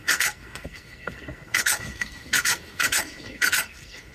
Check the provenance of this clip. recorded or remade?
remade